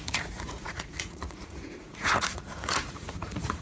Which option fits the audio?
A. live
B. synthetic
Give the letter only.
B